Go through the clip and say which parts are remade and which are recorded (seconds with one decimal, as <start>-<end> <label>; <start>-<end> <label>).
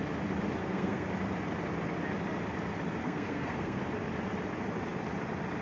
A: 0.0-0.6 recorded; 0.6-1.1 remade; 1.1-3.0 recorded; 3.0-3.8 remade; 3.8-5.6 recorded